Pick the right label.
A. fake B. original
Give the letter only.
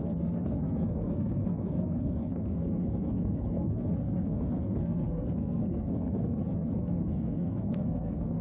A